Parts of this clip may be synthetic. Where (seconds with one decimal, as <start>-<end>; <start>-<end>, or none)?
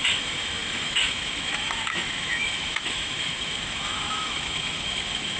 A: 0.0-5.4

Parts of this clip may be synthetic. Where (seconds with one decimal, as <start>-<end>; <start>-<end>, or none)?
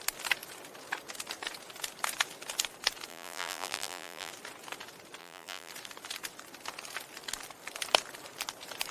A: 3.1-4.3; 5.2-5.7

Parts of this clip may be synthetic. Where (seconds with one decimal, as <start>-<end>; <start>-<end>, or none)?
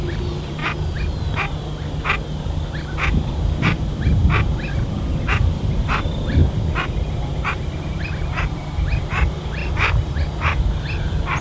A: 0.0-0.6; 3.6-4.2; 4.7-6.4; 7.5-11.4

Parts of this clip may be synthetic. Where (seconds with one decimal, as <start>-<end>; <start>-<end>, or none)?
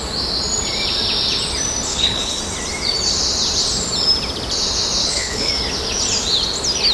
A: 1.9-2.4; 5.0-5.5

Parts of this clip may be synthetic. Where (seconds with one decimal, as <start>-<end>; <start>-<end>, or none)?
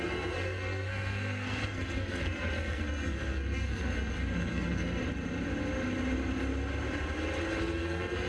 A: 0.0-5.0; 7.6-8.3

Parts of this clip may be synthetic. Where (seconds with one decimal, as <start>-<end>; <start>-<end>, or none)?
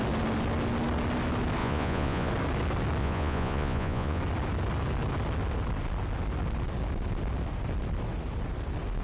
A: 1.6-2.3; 3.0-4.2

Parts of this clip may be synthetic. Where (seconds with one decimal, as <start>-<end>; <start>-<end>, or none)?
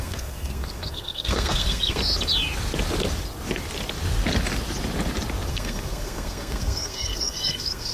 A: 0.0-2.0; 5.5-7.9